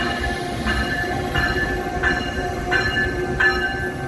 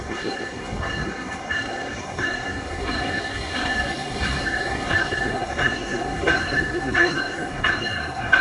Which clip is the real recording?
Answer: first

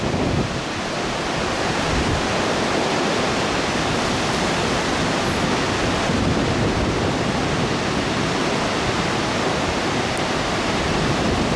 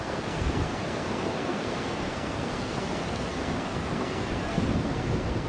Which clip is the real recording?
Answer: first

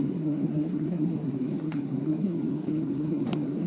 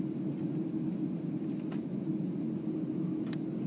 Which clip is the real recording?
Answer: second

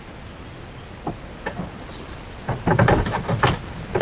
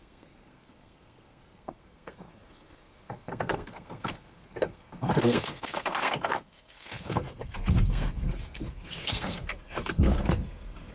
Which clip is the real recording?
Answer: first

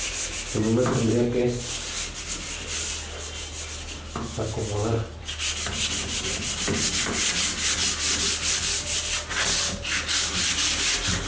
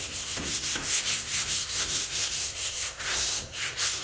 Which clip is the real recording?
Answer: first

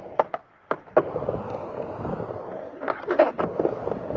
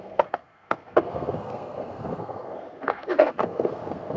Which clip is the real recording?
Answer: first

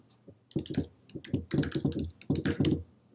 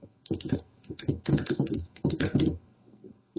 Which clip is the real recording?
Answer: first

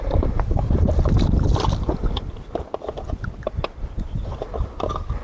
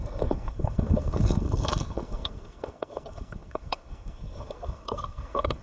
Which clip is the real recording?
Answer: first